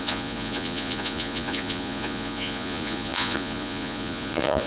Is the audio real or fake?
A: fake